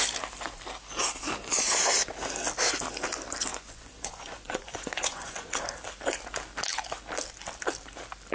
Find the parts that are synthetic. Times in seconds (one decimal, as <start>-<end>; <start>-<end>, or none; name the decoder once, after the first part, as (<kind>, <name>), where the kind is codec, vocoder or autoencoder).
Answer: 3.5-5.5 (vocoder, Vocos)